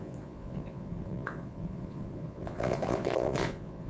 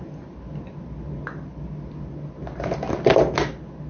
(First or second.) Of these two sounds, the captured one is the second